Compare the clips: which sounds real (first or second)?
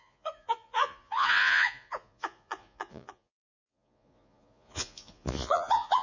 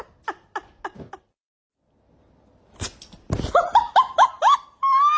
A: second